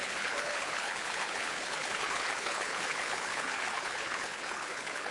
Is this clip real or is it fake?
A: fake